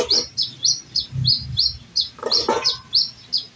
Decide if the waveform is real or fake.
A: real